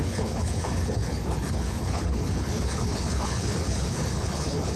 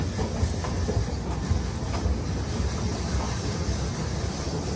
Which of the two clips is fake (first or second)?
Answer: first